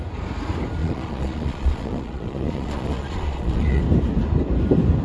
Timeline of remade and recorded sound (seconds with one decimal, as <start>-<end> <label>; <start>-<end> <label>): 0.0-0.8 recorded; 0.8-3.8 remade; 3.8-5.0 recorded